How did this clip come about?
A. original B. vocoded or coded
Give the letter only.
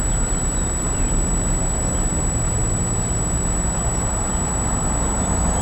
A